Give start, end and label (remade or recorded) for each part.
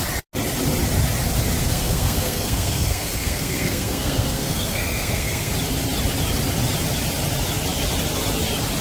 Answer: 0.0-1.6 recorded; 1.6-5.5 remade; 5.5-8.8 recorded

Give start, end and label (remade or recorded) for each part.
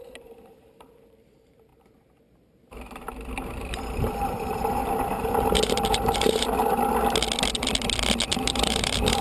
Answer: 0.0-4.8 remade; 4.8-5.6 recorded; 5.6-6.6 remade; 6.6-8.3 recorded; 8.3-9.2 remade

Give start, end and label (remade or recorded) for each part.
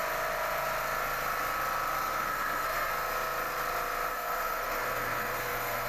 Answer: 0.0-2.0 recorded; 2.0-2.9 remade; 2.9-4.1 recorded; 4.1-5.9 remade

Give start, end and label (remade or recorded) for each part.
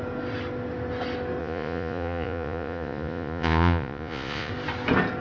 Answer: 0.0-1.4 recorded; 1.4-4.5 remade; 4.5-5.2 recorded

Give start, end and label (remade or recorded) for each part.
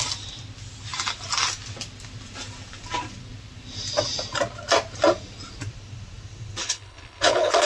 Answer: 0.0-6.6 recorded; 6.6-7.7 remade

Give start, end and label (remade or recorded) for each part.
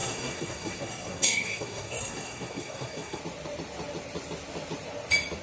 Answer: 0.0-3.2 remade; 3.2-5.4 recorded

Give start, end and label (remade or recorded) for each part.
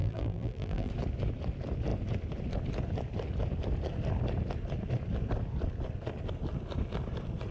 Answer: 0.0-0.9 remade; 0.9-7.5 recorded